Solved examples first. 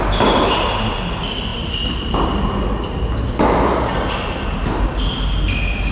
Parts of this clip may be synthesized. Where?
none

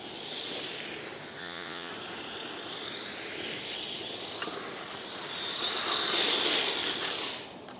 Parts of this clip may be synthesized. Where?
1.4-1.9

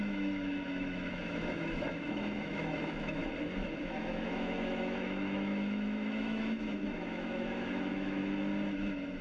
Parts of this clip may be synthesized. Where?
0.0-3.2; 3.9-8.2